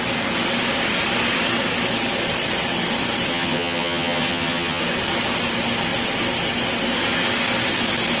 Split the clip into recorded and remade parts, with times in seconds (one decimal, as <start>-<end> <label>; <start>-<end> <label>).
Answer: 0.0-3.3 recorded; 3.3-4.8 remade; 4.8-8.2 recorded